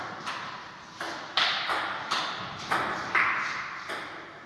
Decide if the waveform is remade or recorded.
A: remade